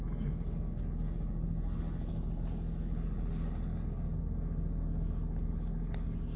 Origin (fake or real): real